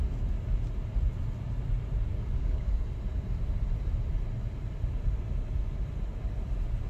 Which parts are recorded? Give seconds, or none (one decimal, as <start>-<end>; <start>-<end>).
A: 0.0-2.1; 2.7-6.9